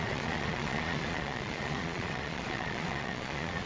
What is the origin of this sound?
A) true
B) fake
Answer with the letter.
B